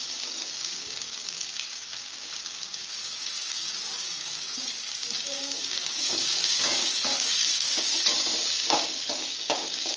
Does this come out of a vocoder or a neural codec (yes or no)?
yes